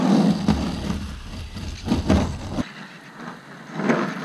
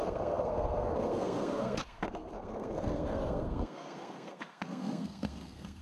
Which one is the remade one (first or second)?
second